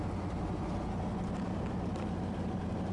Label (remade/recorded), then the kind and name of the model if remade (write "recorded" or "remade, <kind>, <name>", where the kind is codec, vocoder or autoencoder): recorded